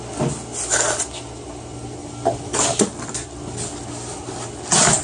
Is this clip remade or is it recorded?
recorded